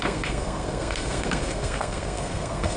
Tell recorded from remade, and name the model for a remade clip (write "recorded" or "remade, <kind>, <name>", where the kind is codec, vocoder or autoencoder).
remade, codec, SNAC